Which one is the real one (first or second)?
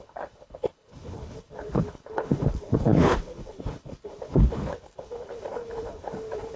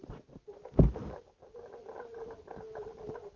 second